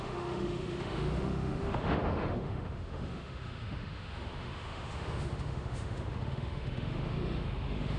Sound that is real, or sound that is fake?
fake